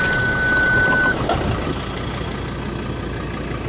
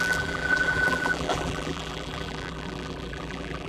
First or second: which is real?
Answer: first